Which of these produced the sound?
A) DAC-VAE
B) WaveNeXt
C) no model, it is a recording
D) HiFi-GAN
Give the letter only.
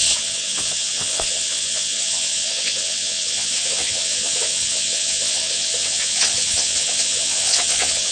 B